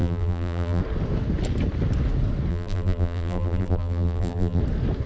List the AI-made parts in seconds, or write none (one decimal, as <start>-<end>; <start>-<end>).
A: 0.0-0.8; 2.5-4.6